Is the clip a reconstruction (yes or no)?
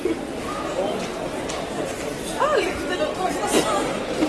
no